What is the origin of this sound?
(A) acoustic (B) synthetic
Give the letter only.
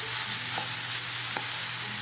A